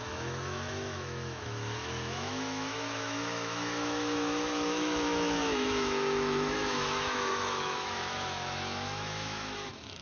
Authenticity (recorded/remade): remade